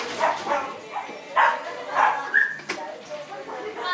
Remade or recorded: recorded